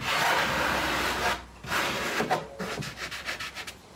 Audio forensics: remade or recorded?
recorded